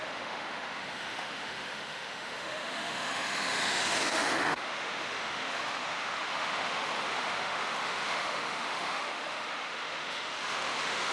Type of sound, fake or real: fake